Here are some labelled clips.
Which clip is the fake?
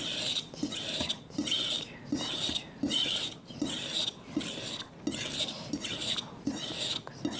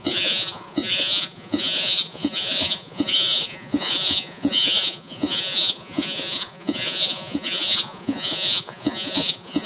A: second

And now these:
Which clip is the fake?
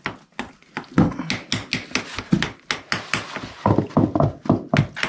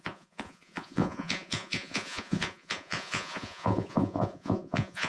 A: second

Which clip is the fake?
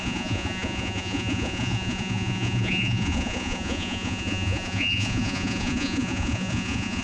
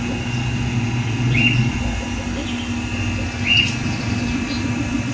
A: first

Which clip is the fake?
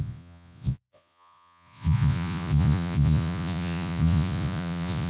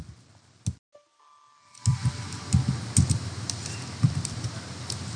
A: first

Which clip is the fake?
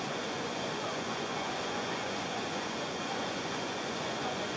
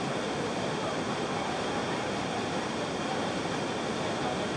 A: first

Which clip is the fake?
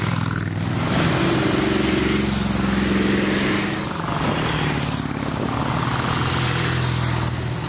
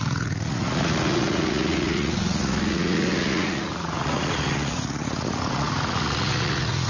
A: second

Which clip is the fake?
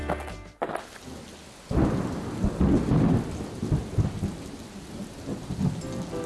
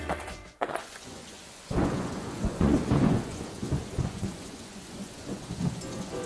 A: second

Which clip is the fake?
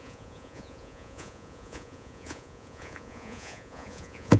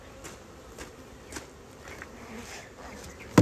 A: first